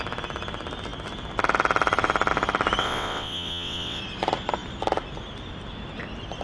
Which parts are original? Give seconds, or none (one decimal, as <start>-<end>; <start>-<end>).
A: 0.0-2.8; 4.0-6.4